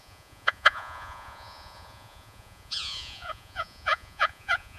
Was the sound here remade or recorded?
remade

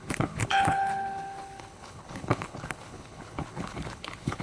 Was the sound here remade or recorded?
remade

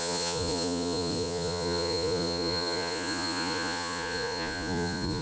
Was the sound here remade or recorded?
remade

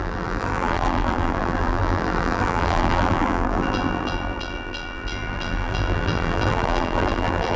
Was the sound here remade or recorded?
remade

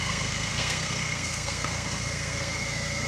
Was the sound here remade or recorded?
remade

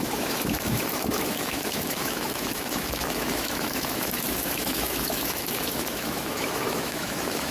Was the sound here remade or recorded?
remade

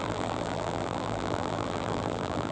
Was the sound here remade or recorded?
remade